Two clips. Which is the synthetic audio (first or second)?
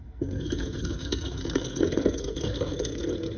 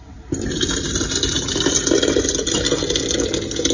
first